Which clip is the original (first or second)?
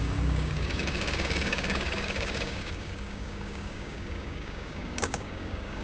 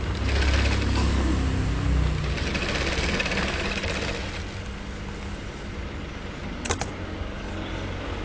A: second